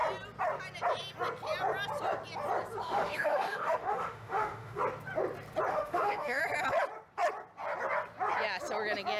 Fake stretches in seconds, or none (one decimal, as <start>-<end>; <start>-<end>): 2.8-4.8; 5.7-6.4